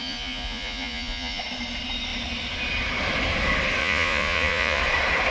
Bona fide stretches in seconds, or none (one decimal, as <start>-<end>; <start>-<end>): 1.4-3.8; 4.8-5.3